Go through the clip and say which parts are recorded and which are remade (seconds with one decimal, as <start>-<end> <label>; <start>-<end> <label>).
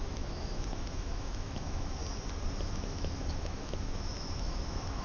0.0-2.0 remade; 2.0-2.6 recorded; 2.6-5.0 remade